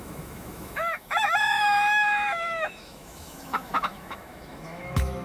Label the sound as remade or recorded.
remade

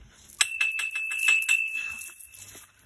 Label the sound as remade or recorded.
recorded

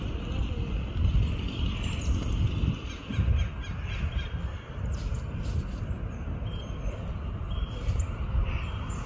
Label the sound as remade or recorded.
recorded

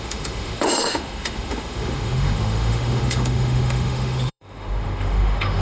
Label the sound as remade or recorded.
remade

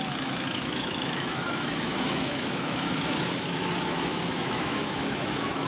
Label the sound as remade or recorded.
remade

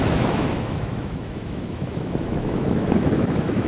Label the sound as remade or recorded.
remade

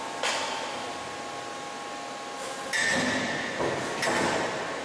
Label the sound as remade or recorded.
recorded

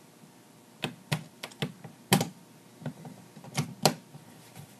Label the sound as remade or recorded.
recorded